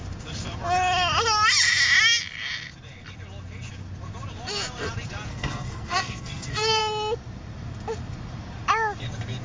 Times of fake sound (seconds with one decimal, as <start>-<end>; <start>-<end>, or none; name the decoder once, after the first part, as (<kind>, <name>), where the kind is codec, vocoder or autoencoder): 5.3-6.8 (codec, SNAC)